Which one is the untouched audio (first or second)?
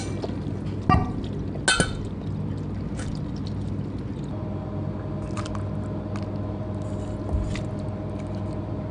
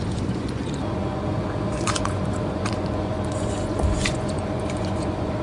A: first